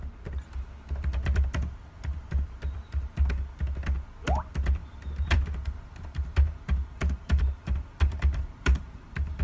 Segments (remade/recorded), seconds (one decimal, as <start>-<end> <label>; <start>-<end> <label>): 0.0-4.8 recorded; 4.8-9.4 remade